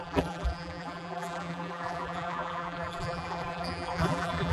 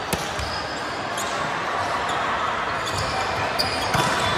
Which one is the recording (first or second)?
second